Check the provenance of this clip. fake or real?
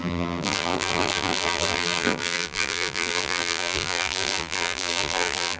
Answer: fake